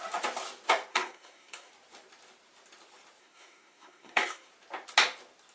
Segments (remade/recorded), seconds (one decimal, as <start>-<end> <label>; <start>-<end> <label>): 0.0-0.9 recorded; 0.9-1.7 remade; 1.7-3.2 recorded; 3.2-4.5 remade; 4.5-5.5 recorded